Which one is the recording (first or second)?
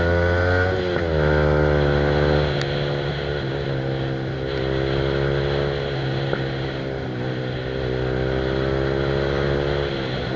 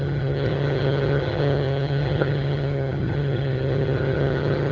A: first